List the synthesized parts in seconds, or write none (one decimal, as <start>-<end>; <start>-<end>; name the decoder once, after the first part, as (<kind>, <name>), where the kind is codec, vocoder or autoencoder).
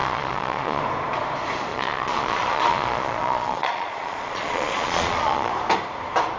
0.0-0.8 (vocoder, Vocos); 1.7-5.5